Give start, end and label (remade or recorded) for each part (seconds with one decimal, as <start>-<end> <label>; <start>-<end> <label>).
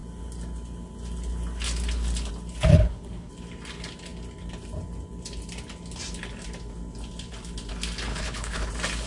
0.0-2.7 recorded; 2.7-3.3 remade; 3.3-8.1 recorded; 8.1-8.7 remade; 8.7-9.1 recorded